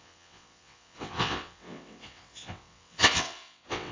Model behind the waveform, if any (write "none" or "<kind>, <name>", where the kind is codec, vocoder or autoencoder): vocoder, WaveNeXt